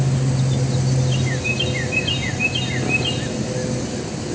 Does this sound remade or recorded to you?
recorded